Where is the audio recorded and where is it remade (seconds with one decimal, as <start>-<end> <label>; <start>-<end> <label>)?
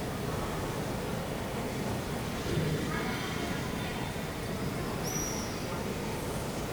0.0-6.7 recorded